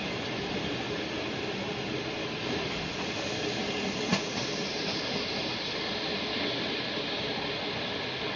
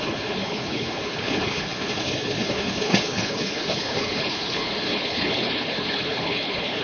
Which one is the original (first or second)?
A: first